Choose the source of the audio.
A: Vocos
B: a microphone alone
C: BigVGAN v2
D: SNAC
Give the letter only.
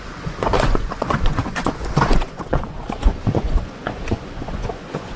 A